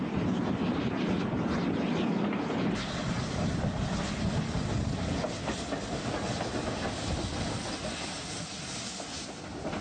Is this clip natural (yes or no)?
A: yes